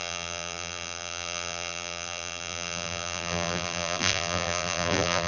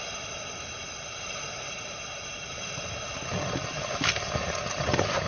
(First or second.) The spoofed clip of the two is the first